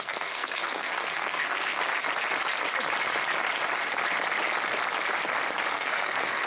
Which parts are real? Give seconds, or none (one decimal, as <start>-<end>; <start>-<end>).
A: 1.8-5.7